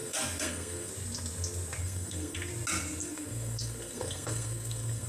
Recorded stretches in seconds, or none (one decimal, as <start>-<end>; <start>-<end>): 0.9-1.8; 2.5-3.0